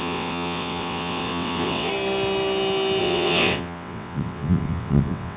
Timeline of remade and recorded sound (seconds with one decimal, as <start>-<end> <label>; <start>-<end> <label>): 0.0-1.9 remade; 1.9-3.0 recorded; 3.0-5.4 remade